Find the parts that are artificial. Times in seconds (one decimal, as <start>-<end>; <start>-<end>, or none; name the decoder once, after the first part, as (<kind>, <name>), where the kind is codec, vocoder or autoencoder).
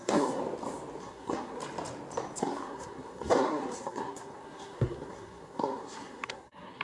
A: 0.0-0.4 (codec, SNAC); 1.0-1.6; 2.4-6.8